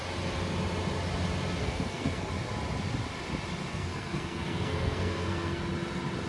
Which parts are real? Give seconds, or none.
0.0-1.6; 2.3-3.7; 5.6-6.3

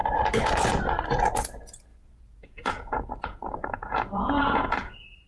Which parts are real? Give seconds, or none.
0.0-1.9

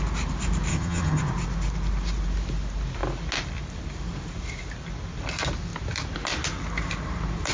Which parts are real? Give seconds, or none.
0.0-0.7; 1.2-7.5